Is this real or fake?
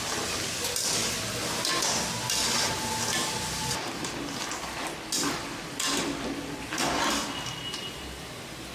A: real